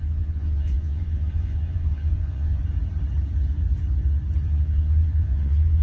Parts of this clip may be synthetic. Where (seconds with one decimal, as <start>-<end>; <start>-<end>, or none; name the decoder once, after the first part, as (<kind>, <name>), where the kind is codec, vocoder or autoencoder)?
0.0-2.6 (vocoder, Vocos); 4.4-5.8